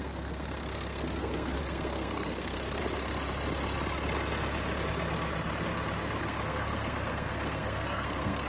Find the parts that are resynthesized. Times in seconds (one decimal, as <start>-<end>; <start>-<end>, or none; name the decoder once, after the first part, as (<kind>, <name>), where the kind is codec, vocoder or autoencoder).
0.0-2.8 (codec, SNAC); 6.2-8.5